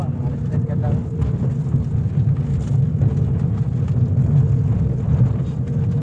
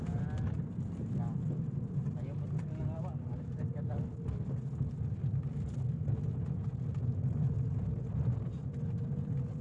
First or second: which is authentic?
first